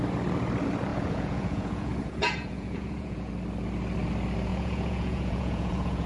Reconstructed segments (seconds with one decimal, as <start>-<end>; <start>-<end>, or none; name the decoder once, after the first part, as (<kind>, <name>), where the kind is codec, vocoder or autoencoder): 0.9-3.3 (vocoder, Vocos); 4.5-6.1